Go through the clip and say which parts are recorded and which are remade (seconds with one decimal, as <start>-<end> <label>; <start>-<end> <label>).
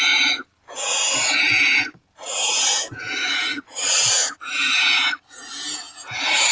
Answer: 0.0-6.5 remade